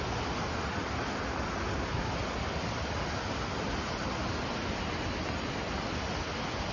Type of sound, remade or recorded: recorded